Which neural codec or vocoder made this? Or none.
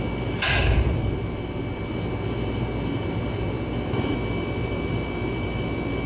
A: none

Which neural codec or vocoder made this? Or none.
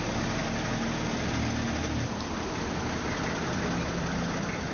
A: none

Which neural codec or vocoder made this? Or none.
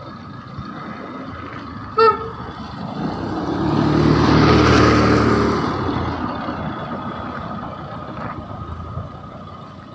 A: none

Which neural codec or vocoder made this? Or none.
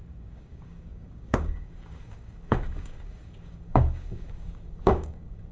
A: codec, DAC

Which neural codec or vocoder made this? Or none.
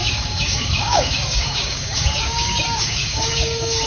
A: codec, DAC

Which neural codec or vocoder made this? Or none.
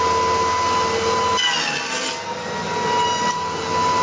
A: none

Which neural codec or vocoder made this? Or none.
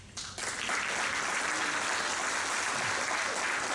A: none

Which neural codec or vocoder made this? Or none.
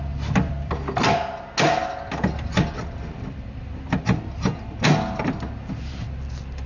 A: none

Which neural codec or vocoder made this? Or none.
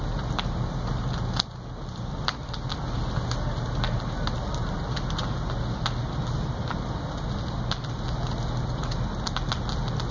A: none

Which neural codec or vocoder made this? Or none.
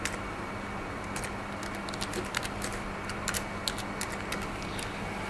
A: none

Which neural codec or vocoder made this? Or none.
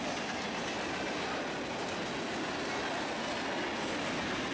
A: none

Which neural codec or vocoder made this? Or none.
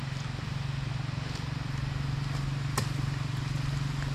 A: none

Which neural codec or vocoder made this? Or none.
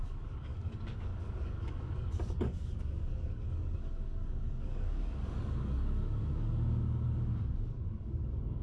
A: codec, DAC